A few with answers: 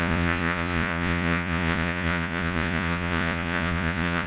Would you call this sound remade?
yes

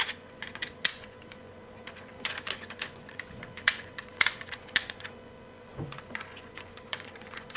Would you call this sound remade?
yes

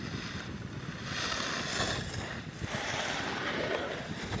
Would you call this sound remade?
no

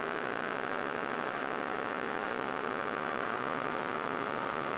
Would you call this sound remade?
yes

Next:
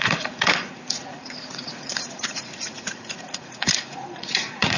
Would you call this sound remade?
yes